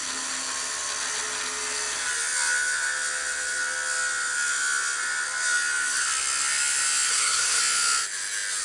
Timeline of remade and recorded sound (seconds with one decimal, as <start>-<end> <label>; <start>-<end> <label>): 0.0-7.1 recorded; 7.1-7.6 remade; 7.6-8.6 recorded